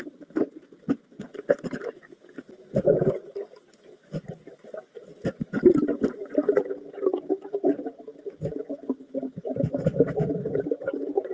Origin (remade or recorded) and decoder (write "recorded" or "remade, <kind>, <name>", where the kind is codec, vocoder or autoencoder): recorded